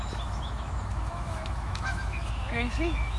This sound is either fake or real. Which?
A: fake